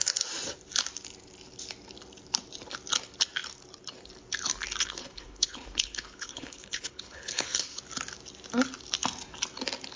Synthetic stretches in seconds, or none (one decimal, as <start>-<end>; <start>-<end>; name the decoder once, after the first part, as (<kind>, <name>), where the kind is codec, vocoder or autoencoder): 4.8-7.8 (codec, HILCodec)